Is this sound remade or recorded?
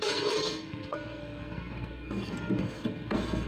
remade